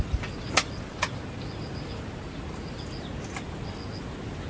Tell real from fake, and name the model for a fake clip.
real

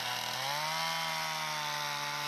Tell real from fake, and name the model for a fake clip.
real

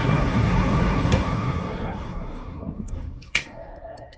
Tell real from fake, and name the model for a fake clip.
fake, codec, SNAC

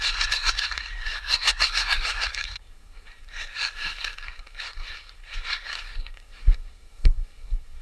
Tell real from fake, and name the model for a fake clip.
fake, codec, SNAC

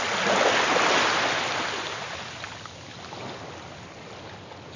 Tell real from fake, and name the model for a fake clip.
real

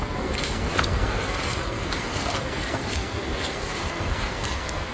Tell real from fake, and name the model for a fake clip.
fake, codec, SNAC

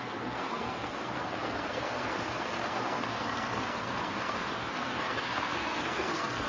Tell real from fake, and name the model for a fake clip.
fake, codec, SNAC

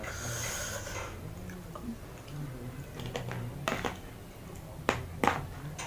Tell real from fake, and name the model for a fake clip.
real